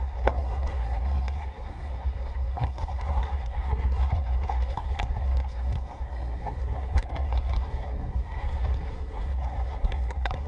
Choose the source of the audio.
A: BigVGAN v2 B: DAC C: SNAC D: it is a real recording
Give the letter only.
C